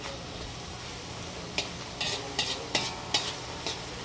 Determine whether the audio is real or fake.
real